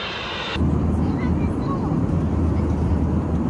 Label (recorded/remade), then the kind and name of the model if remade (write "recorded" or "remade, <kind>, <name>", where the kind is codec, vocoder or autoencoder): remade, vocoder, BigVGAN v2